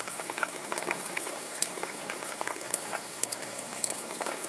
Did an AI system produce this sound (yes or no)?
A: yes